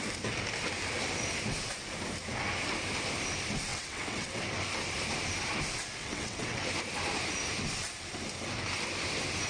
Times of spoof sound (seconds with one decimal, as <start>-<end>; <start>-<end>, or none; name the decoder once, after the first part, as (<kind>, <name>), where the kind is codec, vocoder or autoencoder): 3.7-4.4 (vocoder, WaveNeXt); 6.0-6.6